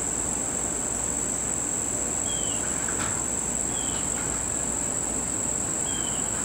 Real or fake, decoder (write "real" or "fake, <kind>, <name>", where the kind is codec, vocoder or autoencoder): real